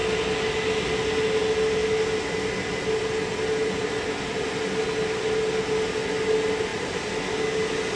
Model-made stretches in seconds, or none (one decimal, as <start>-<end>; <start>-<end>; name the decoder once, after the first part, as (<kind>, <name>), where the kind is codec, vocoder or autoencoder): none